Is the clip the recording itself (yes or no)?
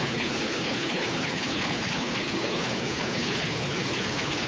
no